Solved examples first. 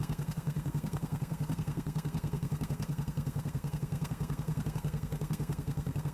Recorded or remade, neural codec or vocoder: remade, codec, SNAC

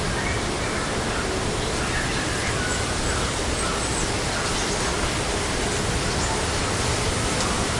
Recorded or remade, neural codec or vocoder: recorded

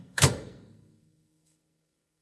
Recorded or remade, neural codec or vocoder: remade, codec, SNAC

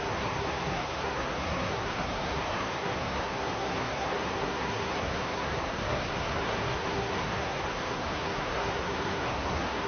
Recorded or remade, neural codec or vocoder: remade, codec, SNAC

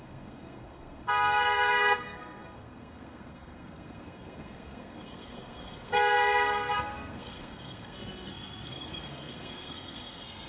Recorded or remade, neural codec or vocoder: remade, codec, SNAC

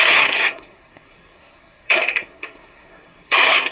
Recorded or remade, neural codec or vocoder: remade, codec, SNAC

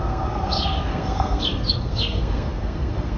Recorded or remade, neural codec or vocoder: remade, codec, SNAC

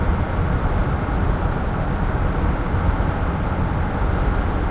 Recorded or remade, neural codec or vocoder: recorded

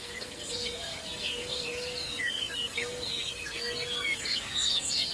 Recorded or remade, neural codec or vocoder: remade, codec, SNAC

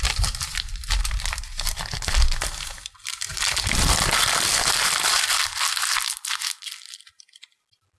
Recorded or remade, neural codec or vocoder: recorded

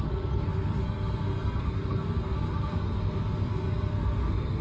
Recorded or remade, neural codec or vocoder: remade, codec, SNAC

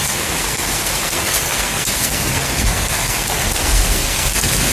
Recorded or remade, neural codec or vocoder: remade, codec, SNAC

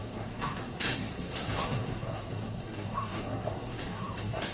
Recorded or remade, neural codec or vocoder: remade, codec, SNAC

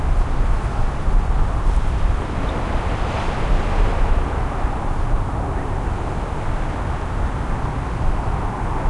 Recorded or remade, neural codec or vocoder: recorded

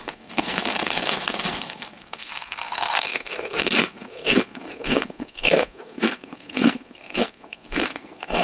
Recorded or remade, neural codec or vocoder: remade, codec, SNAC